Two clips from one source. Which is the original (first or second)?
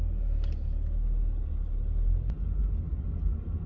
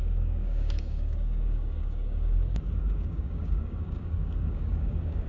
first